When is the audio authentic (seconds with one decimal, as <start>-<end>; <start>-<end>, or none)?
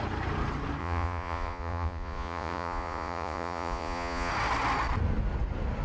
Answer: 0.0-0.8; 4.3-5.8